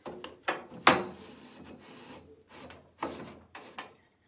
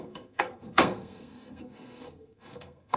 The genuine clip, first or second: first